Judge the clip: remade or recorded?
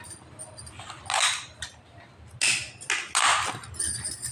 recorded